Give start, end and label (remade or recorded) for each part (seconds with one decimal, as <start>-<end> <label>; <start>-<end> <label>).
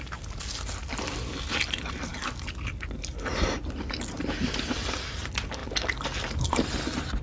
0.0-7.2 recorded